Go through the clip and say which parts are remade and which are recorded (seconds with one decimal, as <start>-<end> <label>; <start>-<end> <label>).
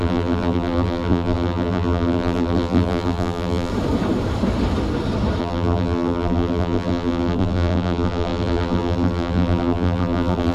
0.0-3.7 remade; 3.7-5.4 recorded; 5.4-10.5 remade